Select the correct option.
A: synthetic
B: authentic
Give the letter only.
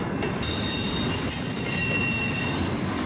B